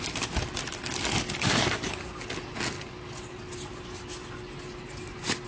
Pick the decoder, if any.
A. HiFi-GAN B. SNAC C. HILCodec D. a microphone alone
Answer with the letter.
D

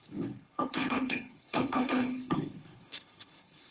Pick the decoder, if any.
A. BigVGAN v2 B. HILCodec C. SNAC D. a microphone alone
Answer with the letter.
B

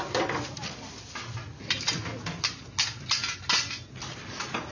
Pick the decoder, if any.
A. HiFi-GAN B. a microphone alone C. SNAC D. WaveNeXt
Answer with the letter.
B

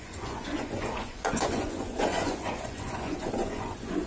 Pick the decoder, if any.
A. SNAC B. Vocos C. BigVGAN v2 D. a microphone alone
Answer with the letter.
B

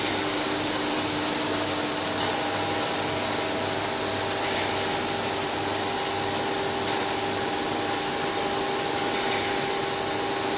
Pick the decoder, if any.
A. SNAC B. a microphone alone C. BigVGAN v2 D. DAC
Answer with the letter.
C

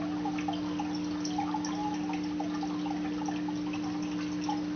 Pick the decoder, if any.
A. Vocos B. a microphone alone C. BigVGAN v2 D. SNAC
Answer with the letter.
B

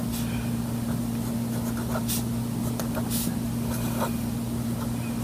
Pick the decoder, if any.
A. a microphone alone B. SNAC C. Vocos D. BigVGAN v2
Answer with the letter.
A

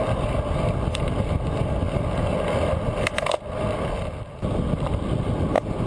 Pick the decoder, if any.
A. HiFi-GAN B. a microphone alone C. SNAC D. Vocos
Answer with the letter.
B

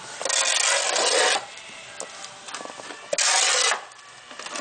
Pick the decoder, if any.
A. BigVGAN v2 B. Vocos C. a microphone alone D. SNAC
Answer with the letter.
C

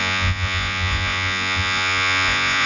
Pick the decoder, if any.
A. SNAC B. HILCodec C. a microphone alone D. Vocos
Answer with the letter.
D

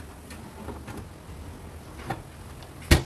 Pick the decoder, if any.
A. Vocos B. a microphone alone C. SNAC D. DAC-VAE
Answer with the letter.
B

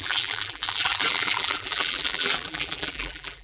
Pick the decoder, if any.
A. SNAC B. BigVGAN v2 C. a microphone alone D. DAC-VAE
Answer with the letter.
B